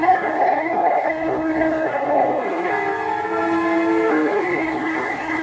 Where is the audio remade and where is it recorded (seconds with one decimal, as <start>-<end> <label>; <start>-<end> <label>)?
0.0-2.7 remade; 2.7-4.1 recorded; 4.1-5.4 remade